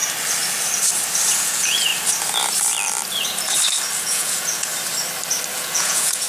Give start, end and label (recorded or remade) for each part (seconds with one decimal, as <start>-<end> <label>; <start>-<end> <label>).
0.0-1.3 recorded; 1.3-1.9 remade; 1.9-4.0 recorded; 4.0-4.7 remade; 4.7-5.5 recorded; 5.5-6.3 remade